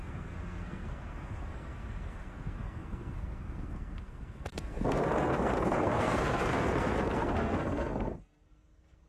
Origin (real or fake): fake